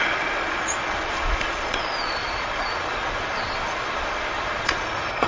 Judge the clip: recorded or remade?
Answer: remade